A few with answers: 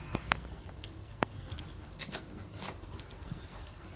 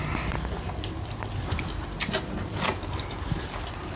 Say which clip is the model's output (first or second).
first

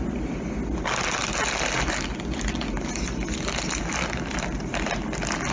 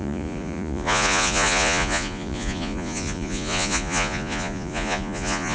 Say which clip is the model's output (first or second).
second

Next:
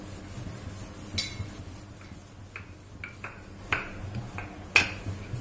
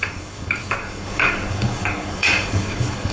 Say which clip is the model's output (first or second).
second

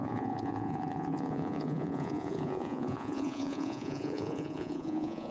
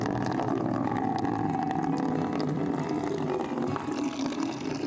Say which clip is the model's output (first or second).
first